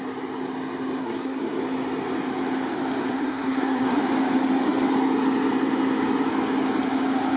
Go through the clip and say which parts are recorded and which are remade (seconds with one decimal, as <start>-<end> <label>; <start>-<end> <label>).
0.0-1.0 recorded; 1.0-1.6 remade; 1.6-3.0 recorded; 3.0-4.0 remade; 4.0-7.4 recorded